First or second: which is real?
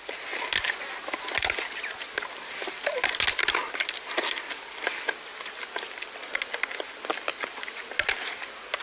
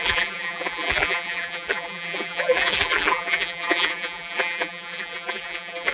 first